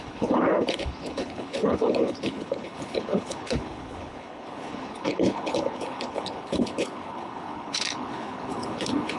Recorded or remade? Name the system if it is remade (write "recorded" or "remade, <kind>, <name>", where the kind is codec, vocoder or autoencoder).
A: remade, codec, HILCodec